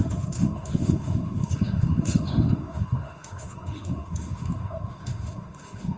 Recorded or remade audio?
remade